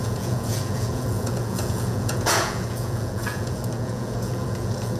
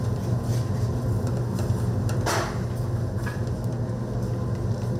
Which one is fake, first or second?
first